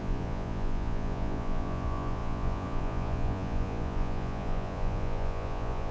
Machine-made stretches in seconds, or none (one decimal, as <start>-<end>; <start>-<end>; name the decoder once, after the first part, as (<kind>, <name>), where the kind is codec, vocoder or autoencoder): 0.0-5.9 (vocoder, Vocos)